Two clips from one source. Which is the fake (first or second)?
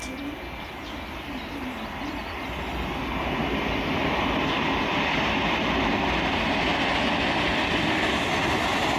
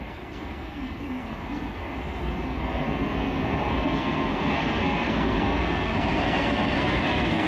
second